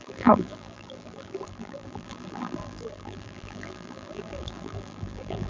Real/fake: fake